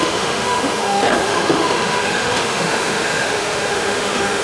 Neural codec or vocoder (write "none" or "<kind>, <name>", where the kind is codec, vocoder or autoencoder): autoencoder, DAC-VAE